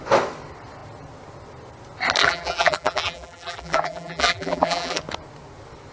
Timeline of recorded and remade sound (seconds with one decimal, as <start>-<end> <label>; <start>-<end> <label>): 0.0-2.2 recorded; 2.2-5.0 remade; 5.0-5.9 recorded